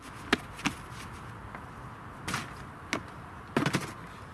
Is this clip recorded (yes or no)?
yes